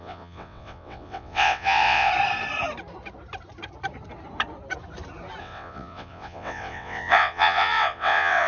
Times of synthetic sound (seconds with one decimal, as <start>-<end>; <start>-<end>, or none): 0.0-2.1; 5.4-8.5